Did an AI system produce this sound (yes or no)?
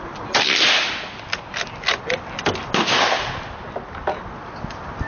no